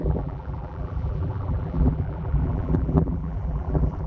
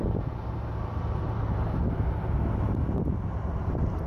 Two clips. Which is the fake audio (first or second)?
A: first